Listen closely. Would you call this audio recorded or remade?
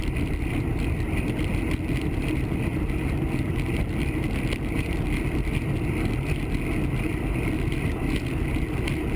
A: recorded